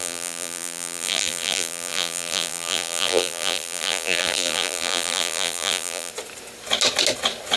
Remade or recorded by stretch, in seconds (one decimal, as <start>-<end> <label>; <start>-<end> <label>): 0.0-6.1 remade; 6.1-7.6 recorded